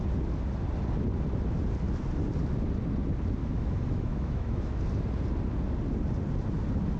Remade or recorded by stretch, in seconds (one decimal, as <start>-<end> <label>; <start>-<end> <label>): 0.0-3.4 recorded; 3.4-4.8 remade; 4.8-7.0 recorded

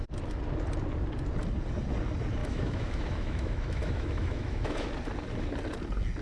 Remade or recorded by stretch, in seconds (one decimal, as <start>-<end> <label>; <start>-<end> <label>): 0.0-2.4 recorded; 2.4-4.9 remade; 4.9-6.2 recorded

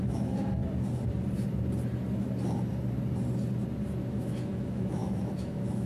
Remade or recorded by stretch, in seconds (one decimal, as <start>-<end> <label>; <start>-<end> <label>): 0.0-0.6 remade; 0.6-4.1 recorded; 4.1-5.9 remade

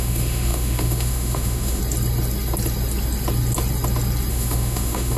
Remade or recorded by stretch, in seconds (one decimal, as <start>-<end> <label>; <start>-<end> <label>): 0.0-1.8 remade; 1.8-4.3 recorded; 4.3-5.2 remade

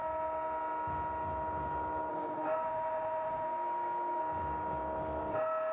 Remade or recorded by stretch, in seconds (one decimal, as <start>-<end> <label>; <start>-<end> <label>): 0.0-2.1 recorded; 2.1-4.2 remade; 4.2-5.3 recorded; 5.3-5.7 remade

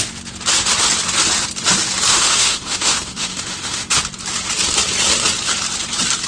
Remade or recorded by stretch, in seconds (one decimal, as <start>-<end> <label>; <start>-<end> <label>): 0.0-2.1 recorded; 2.1-3.9 remade; 3.9-6.3 recorded

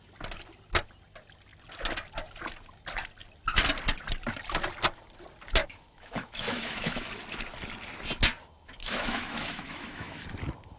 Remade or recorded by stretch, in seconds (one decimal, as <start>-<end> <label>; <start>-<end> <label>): 0.0-5.6 recorded; 5.6-7.1 remade; 7.1-8.8 recorded; 8.8-10.2 remade; 10.2-10.8 recorded